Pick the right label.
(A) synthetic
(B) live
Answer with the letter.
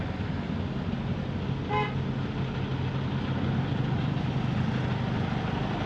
B